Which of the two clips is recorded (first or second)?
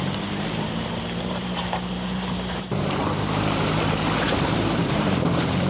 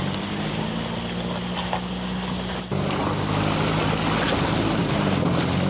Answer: second